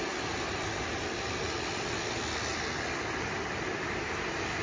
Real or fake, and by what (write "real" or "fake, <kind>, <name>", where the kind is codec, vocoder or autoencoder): real